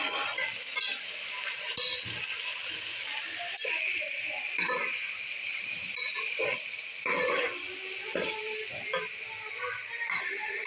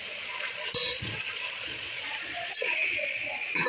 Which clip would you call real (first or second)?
first